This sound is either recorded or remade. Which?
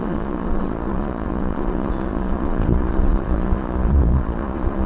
remade